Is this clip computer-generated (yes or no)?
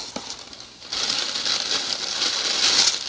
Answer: no